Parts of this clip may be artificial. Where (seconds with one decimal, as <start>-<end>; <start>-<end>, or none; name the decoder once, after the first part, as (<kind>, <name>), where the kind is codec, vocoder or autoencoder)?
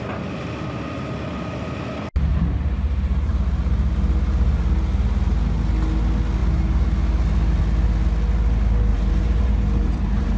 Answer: 2.3-3.3 (vocoder, BigVGAN v2); 8.9-10.4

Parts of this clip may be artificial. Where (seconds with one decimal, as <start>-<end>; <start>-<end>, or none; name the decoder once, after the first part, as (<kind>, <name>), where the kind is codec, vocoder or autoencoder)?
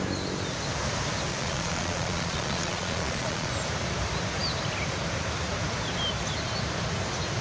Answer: 1.3-3.5 (vocoder, Vocos)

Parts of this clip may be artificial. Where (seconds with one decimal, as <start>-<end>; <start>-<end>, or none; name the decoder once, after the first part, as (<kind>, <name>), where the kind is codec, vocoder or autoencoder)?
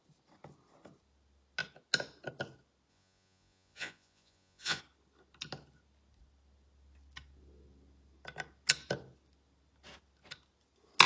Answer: 2.9-4.8 (vocoder, Vocos)